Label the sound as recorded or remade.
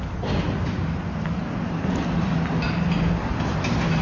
recorded